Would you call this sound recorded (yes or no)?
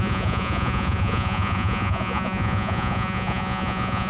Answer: no